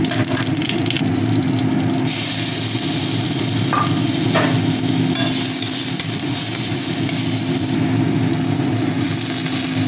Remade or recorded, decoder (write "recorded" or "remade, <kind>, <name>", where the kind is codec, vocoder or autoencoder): recorded